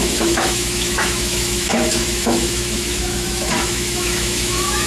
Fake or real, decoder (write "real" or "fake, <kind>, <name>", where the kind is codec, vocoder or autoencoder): fake, autoencoder, DAC-VAE